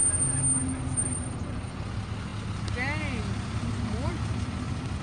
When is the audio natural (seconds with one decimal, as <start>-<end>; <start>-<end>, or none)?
0.0-1.0; 1.7-5.0